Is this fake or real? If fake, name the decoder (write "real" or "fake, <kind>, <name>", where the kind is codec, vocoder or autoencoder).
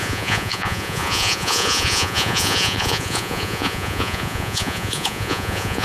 fake, vocoder, Vocos